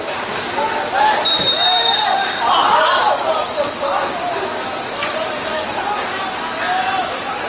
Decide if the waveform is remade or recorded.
recorded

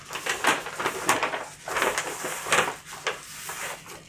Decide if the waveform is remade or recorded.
recorded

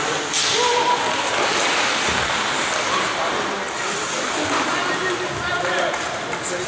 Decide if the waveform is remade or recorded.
recorded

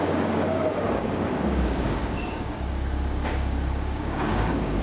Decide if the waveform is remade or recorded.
remade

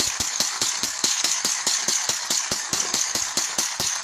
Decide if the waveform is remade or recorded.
remade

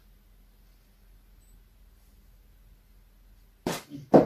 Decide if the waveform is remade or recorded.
recorded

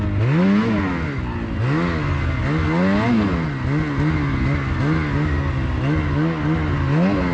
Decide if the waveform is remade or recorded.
recorded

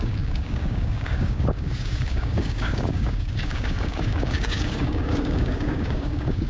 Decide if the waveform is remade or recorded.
remade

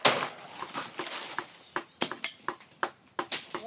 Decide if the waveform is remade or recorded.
recorded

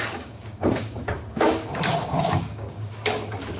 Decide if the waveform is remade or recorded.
remade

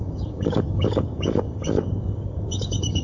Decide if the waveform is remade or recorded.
remade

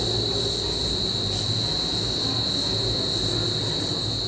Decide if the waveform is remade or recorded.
recorded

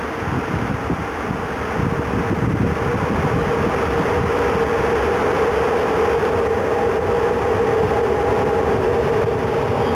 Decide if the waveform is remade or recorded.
recorded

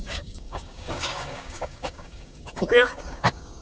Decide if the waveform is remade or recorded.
remade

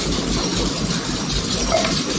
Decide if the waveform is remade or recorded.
recorded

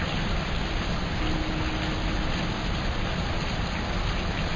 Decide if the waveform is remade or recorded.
recorded